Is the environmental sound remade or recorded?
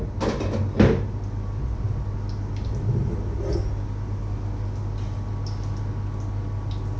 recorded